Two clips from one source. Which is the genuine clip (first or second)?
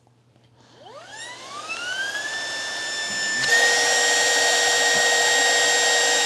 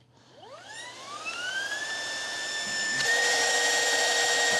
first